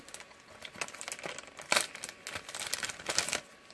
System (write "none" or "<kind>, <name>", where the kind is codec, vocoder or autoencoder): none